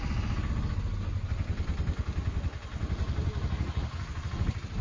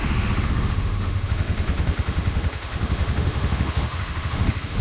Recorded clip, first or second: first